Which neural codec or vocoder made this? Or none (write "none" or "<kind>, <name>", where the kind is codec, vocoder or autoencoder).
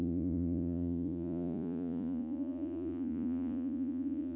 vocoder, Vocos